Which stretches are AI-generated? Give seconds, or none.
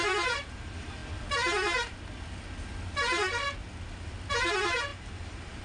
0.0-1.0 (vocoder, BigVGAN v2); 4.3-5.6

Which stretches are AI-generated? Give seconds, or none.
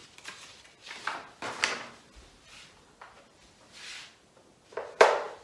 none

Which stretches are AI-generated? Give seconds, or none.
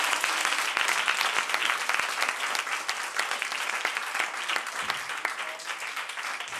none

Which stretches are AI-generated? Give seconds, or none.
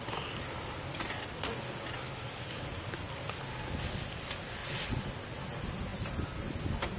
4.6-5.1 (vocoder, Vocos)